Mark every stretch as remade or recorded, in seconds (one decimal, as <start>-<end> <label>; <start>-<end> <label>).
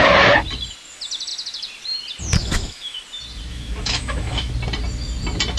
0.0-2.4 recorded; 2.4-3.0 remade; 3.0-3.5 recorded; 3.5-4.5 remade; 4.5-5.6 recorded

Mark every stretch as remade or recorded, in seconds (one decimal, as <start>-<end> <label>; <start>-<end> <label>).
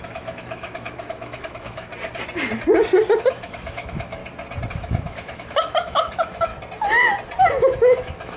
0.0-1.9 remade; 1.9-3.2 recorded; 3.2-4.2 remade; 4.2-4.7 recorded; 4.7-6.5 remade; 6.5-7.4 recorded; 7.4-8.4 remade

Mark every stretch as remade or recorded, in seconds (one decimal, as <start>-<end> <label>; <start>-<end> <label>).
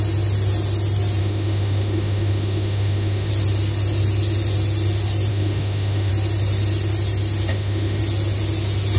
0.0-1.2 recorded; 1.2-3.3 remade; 3.3-5.3 recorded; 5.3-6.1 remade; 6.1-7.5 recorded; 7.5-8.0 remade; 8.0-9.0 recorded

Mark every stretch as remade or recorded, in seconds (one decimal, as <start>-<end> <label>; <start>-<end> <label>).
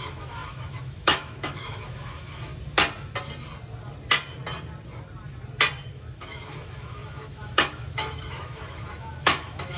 0.0-2.5 remade; 2.5-5.9 recorded; 5.9-9.8 remade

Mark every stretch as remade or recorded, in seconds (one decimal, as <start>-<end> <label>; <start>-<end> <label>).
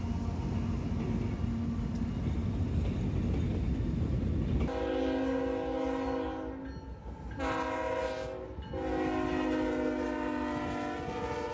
0.0-11.5 recorded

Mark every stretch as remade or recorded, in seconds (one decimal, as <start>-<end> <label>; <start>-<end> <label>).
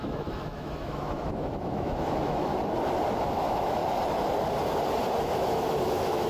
0.0-2.5 remade; 2.5-3.1 recorded; 3.1-3.8 remade; 3.8-5.2 recorded; 5.2-6.3 remade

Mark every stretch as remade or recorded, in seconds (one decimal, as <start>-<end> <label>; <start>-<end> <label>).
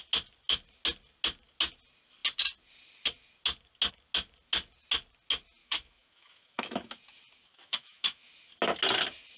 0.0-5.6 recorded; 5.6-6.9 remade; 6.9-7.5 recorded; 7.5-8.3 remade; 8.3-9.4 recorded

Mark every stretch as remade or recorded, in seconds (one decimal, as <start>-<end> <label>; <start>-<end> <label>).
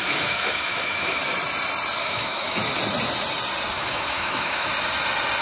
0.0-1.2 remade; 1.2-2.0 recorded; 2.0-2.6 remade; 2.6-3.7 recorded; 3.7-4.7 remade; 4.7-5.4 recorded